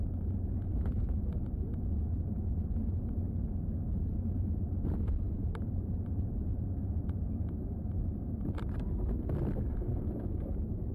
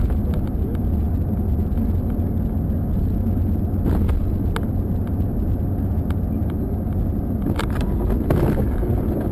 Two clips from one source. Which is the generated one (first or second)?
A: first